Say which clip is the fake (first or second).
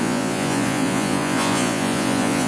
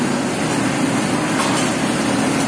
first